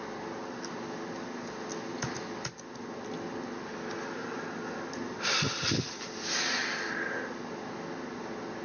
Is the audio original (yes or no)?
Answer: yes